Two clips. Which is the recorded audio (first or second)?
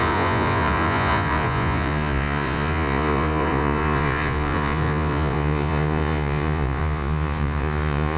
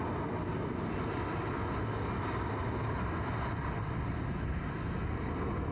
second